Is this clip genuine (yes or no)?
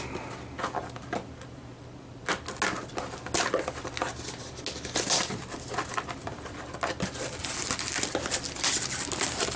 yes